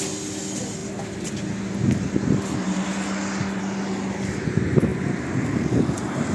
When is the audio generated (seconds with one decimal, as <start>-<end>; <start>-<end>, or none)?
none